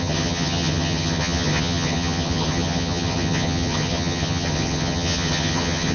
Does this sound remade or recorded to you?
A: remade